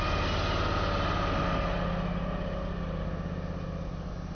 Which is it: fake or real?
real